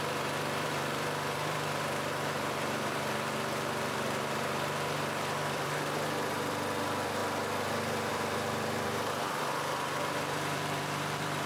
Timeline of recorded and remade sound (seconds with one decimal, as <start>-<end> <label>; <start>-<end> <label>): 0.0-7.2 remade; 7.2-8.1 recorded; 8.1-11.5 remade